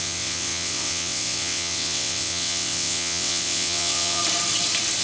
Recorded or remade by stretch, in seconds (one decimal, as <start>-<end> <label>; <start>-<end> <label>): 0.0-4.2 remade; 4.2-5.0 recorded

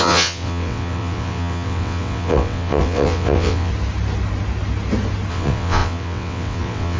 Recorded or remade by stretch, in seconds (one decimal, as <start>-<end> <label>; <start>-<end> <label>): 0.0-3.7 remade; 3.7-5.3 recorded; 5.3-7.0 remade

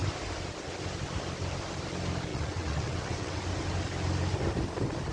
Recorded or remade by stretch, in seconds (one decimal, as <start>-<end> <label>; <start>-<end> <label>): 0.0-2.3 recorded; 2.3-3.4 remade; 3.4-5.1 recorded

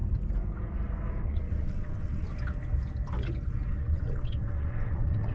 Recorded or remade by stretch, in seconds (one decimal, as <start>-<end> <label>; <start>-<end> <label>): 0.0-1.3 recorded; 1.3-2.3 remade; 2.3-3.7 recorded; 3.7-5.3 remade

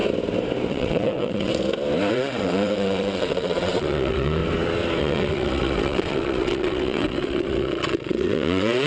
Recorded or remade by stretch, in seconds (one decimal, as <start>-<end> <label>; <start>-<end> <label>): 0.0-0.7 recorded; 0.7-1.5 remade; 1.5-2.1 recorded; 2.1-4.4 remade; 4.4-5.0 recorded; 5.0-8.9 remade

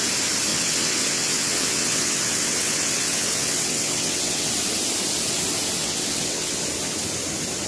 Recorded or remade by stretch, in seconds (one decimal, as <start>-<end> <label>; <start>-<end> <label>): 0.0-0.5 recorded; 0.5-4.5 remade; 4.5-5.8 recorded; 5.8-6.5 remade; 6.5-7.7 recorded

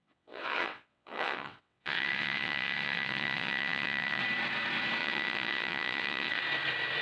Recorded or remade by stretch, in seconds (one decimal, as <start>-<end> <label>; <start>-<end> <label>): 0.0-4.2 remade; 4.2-5.0 recorded; 5.0-6.4 remade; 6.4-7.0 recorded